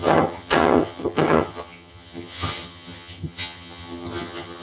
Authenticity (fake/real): fake